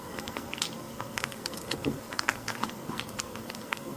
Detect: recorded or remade remade